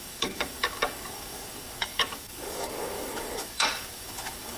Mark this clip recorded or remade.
remade